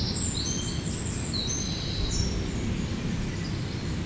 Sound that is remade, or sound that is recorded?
recorded